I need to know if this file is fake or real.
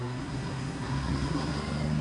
fake